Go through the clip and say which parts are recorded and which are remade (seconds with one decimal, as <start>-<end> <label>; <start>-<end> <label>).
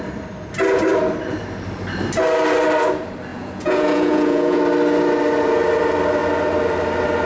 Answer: 0.0-3.3 recorded; 3.3-4.6 remade; 4.6-7.3 recorded